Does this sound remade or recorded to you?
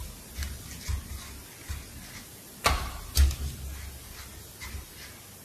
recorded